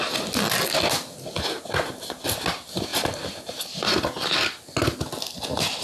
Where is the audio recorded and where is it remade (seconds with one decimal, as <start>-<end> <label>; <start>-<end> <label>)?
0.0-5.8 recorded